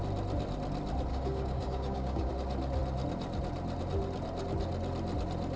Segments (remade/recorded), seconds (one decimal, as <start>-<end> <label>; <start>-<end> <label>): 0.0-1.1 recorded; 1.1-2.3 remade; 2.3-5.6 recorded